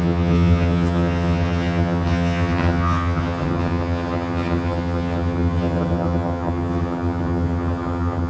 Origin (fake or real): fake